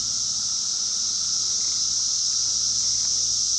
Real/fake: real